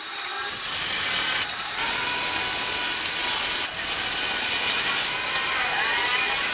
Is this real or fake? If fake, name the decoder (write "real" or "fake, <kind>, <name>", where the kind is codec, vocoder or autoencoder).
real